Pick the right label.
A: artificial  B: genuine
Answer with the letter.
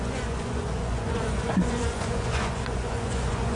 A